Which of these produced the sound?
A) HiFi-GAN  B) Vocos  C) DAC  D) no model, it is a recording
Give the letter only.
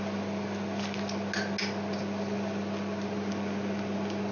D